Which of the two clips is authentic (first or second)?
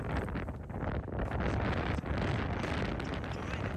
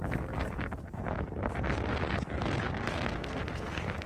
first